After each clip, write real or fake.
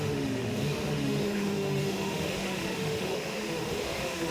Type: fake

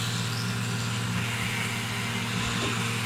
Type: real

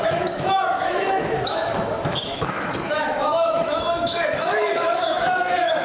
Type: fake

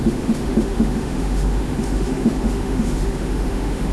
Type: fake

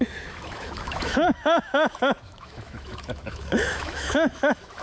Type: fake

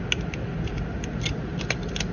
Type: real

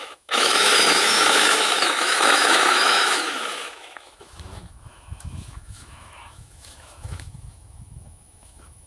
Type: fake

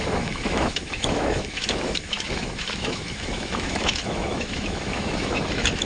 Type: fake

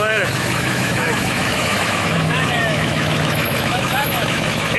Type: fake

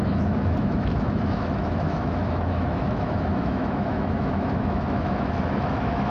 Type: fake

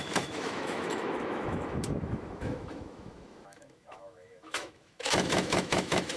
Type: fake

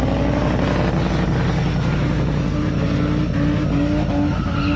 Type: real